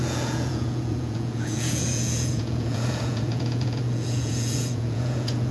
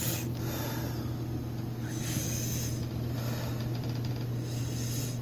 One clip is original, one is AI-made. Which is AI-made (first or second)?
first